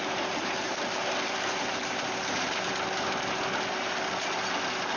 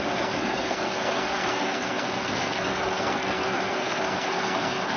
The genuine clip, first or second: first